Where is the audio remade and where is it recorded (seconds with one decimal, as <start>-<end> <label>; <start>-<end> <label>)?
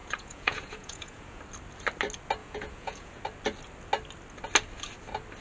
0.0-1.4 remade; 1.4-2.4 recorded; 2.4-3.2 remade; 3.2-5.4 recorded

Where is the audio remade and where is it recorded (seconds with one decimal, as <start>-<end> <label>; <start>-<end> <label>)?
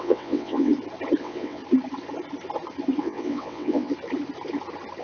0.0-0.7 remade; 0.7-1.2 recorded; 1.2-1.6 remade; 1.6-3.0 recorded; 3.0-3.9 remade; 3.9-5.0 recorded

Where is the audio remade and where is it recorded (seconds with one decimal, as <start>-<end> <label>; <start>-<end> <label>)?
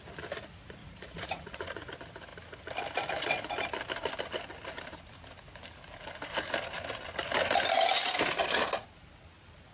0.0-0.8 recorded; 0.8-1.9 remade; 1.9-9.7 recorded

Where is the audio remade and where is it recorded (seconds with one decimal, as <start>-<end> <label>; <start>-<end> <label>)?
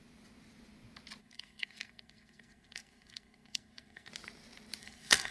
0.0-1.2 recorded; 1.2-4.1 remade; 4.1-4.8 recorded; 4.8-5.3 remade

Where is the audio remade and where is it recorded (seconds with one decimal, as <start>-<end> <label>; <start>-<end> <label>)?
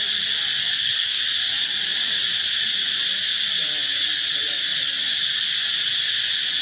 0.0-0.6 recorded; 0.6-1.2 remade; 1.2-6.6 recorded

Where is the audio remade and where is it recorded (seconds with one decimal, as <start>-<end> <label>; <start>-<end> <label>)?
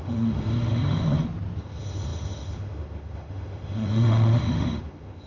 0.0-0.7 remade; 0.7-1.6 recorded; 1.6-5.3 remade